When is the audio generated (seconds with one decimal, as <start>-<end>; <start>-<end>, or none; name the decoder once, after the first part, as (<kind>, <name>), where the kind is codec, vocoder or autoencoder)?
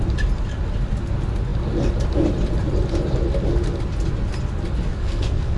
4.9-5.6 (codec, SNAC)